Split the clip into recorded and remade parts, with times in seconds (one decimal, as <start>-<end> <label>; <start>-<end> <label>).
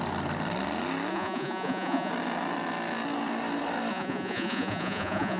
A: 0.0-1.1 recorded; 1.1-2.1 remade; 2.1-3.9 recorded; 3.9-5.4 remade